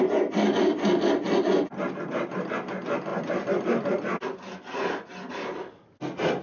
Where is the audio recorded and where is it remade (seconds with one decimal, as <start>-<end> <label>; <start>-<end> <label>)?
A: 0.0-6.4 recorded